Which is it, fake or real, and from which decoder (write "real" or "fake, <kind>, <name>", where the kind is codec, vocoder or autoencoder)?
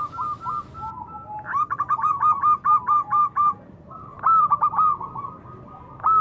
real